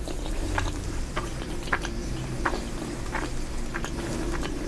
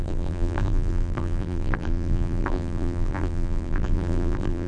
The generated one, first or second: second